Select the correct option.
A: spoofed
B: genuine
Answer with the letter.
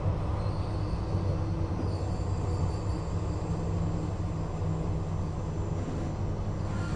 B